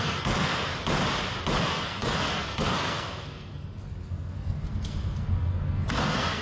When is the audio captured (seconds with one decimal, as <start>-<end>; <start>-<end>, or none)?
0.7-1.6